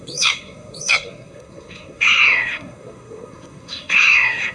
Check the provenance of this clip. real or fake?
fake